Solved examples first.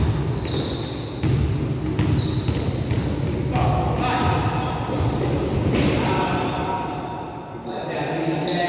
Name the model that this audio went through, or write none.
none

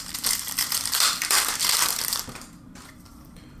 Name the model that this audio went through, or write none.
vocoder, BigVGAN v2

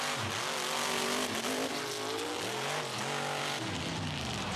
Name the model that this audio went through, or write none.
none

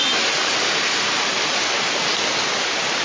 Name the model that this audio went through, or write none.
none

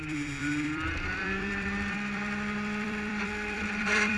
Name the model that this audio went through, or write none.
vocoder, BigVGAN v2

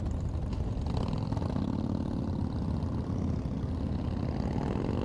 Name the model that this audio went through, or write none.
none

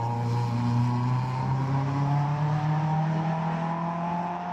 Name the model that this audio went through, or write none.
none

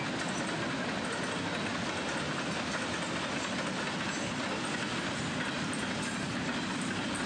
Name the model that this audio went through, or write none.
none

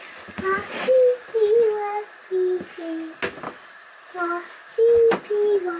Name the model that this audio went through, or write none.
none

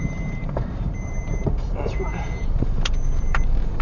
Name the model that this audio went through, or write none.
vocoder, BigVGAN v2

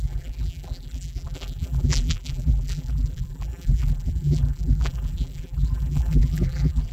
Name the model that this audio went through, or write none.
vocoder, BigVGAN v2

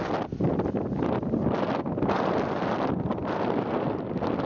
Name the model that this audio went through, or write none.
none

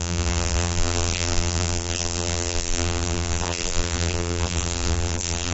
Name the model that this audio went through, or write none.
vocoder, BigVGAN v2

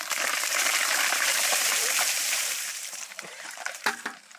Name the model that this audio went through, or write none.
vocoder, BigVGAN v2